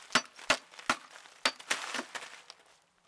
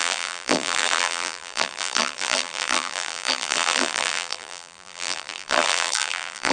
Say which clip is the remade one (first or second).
second